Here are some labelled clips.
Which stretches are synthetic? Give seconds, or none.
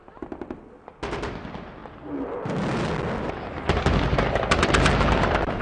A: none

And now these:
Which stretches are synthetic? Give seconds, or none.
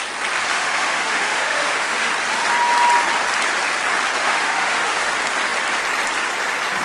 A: 0.5-2.1 (autoencoder, DAC-VAE); 4.2-5.1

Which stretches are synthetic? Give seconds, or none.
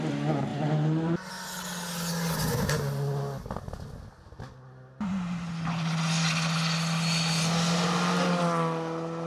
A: none